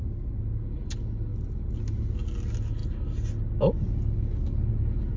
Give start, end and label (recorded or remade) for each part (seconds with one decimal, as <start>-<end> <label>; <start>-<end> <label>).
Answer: 0.0-5.2 recorded